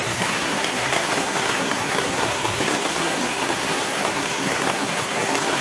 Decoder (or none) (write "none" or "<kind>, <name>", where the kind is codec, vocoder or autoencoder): codec, SNAC